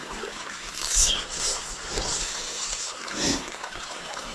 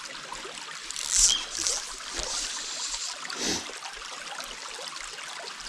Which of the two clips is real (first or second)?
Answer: second